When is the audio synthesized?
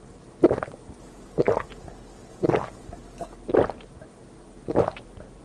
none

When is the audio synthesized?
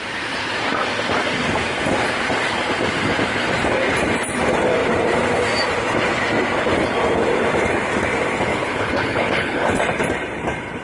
8.5-9.8 (codec, HILCodec)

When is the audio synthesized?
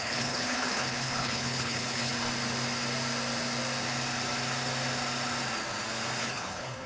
0.0-2.1 (codec, HILCodec); 6.2-6.9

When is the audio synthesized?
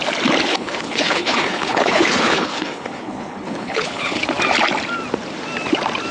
0.5-4.2 (codec, HILCodec)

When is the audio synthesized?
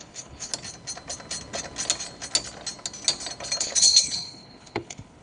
0.0-0.5 (codec, HILCodec); 3.6-5.2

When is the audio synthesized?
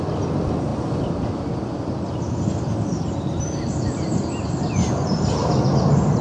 none